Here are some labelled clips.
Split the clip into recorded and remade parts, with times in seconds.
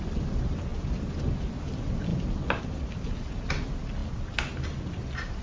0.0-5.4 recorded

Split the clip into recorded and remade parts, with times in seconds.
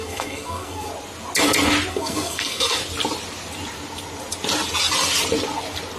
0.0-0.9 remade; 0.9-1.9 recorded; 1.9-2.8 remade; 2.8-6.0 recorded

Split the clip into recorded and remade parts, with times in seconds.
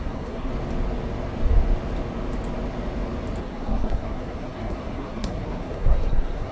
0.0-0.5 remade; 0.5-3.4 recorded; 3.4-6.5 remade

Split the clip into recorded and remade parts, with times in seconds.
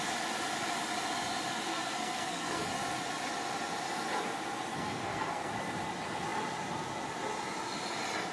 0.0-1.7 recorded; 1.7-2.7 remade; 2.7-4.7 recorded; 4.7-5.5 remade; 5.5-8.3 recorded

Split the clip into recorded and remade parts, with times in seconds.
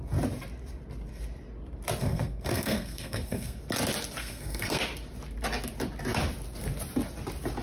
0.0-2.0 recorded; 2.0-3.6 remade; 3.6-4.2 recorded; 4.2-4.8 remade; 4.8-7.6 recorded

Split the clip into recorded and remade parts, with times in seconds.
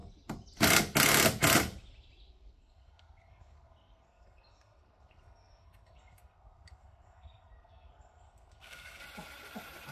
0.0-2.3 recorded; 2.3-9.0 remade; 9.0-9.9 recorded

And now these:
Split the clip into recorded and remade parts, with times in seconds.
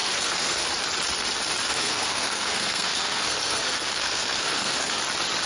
0.0-0.7 remade; 0.7-1.7 recorded; 1.7-5.0 remade; 5.0-5.5 recorded